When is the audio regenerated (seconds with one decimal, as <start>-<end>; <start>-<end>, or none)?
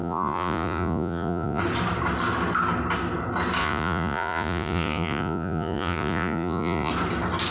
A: 0.0-1.6; 3.6-6.9